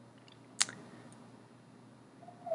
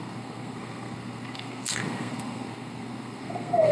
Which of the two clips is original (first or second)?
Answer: first